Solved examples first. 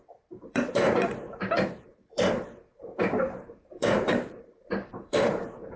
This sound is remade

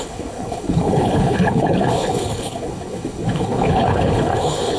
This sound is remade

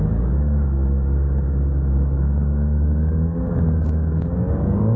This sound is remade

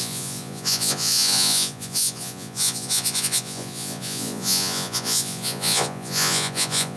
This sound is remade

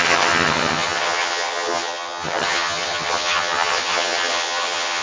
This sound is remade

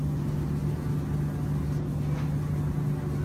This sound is recorded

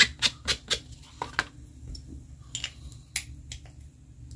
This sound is recorded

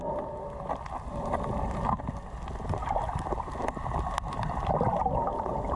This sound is recorded